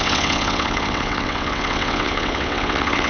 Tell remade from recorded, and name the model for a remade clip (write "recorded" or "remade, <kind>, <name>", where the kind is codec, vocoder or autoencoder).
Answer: remade, vocoder, WaveNeXt